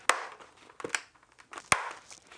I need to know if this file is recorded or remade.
recorded